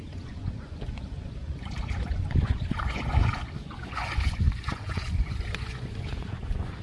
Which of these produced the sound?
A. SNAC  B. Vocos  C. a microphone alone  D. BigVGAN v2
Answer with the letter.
B